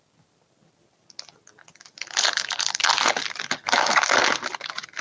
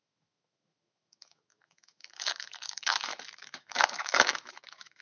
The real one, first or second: first